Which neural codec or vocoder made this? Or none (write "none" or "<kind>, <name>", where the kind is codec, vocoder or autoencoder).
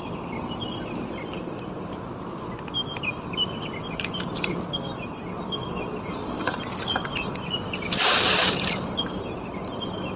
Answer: none